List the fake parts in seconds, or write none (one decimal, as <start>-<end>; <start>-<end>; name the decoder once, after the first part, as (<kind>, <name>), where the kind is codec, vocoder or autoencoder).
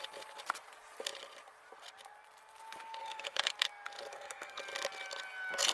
3.0-3.5 (codec, SNAC); 4.1-4.6